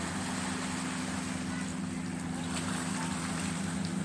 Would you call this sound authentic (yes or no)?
yes